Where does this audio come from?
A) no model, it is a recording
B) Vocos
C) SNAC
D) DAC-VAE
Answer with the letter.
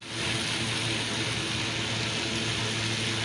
A